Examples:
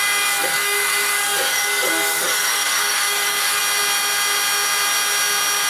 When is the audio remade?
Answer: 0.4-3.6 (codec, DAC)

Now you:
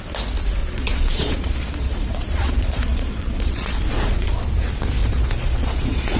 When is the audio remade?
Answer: 0.6-4.3 (vocoder, Vocos); 5.0-6.2

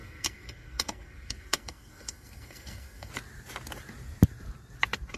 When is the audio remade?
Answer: 0.0-3.1 (codec, SNAC)